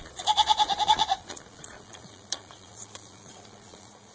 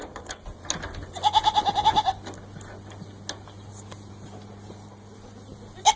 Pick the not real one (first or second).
first